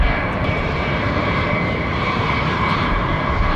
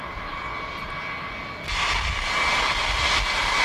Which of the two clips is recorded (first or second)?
second